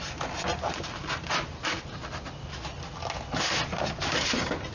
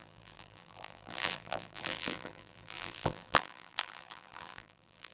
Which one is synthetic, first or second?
second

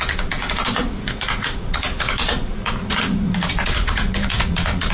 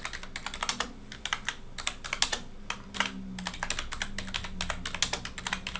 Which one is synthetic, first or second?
first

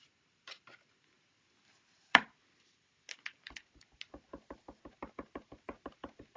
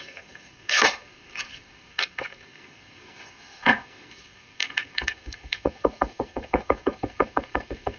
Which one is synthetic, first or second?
second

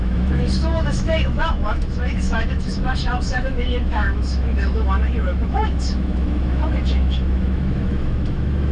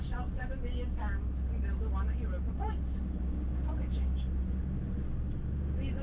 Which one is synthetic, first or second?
first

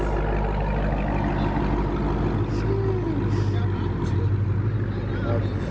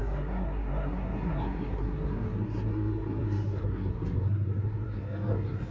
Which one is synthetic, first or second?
second